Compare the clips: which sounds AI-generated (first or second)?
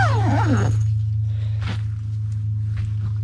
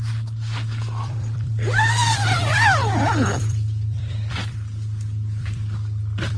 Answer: second